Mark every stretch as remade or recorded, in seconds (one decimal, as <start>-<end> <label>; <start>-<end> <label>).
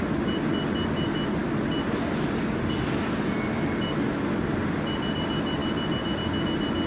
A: 0.0-6.9 recorded